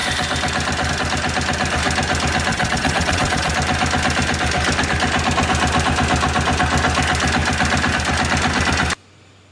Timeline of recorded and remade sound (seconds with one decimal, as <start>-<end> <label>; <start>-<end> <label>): 0.0-2.5 recorded; 2.5-3.5 remade; 3.5-9.5 recorded